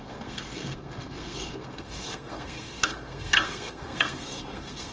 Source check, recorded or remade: remade